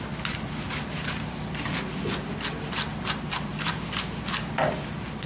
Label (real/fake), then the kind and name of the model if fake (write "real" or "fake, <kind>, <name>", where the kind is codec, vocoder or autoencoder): real